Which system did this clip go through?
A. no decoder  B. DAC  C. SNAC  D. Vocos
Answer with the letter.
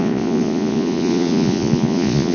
D